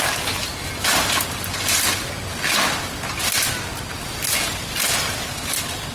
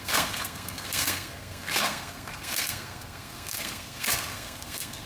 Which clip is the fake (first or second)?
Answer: second